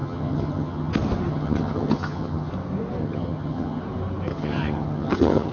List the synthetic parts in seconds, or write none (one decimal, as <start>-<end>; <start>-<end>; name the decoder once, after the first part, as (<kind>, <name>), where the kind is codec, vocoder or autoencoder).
0.0-0.9 (vocoder, HiFi-GAN); 1.3-2.5; 3.0-3.8; 4.3-5.5

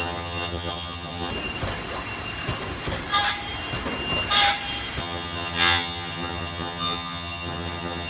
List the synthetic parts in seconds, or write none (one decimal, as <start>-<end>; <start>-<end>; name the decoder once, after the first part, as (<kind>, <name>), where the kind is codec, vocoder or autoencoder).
0.0-1.3 (vocoder, HiFi-GAN); 5.0-8.1

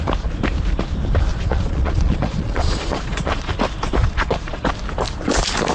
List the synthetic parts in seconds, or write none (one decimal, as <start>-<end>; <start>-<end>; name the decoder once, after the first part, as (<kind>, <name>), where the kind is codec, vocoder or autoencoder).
1.3-3.5 (vocoder, Vocos); 4.0-4.6